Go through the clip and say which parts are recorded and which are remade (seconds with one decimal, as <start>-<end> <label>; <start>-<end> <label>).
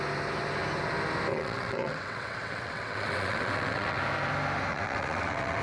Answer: 0.0-1.3 recorded; 1.3-4.0 remade; 4.0-4.7 recorded; 4.7-5.6 remade